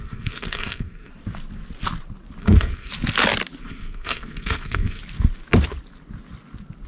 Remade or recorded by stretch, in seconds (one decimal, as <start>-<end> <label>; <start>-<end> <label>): 0.0-1.1 remade; 1.1-2.4 recorded; 2.4-2.9 remade; 2.9-3.6 recorded; 3.6-5.0 remade; 5.0-6.9 recorded